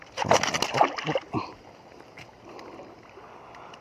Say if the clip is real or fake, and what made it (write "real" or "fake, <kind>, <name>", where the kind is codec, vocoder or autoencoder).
real